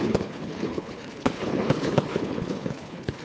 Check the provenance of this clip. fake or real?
fake